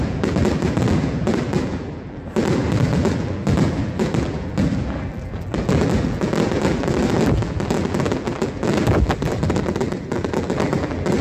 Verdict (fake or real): fake